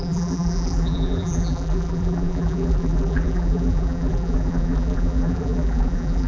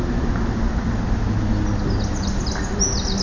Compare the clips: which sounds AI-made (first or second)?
first